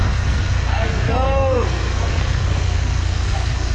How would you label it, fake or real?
fake